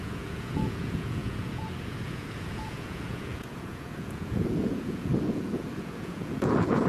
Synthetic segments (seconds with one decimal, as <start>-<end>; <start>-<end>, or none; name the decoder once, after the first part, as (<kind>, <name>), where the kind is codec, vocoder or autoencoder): 0.0-6.9 (vocoder, Vocos)